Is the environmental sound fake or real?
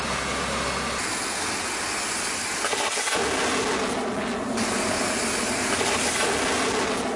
real